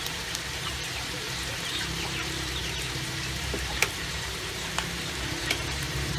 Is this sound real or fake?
fake